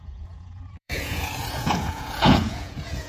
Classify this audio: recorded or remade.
remade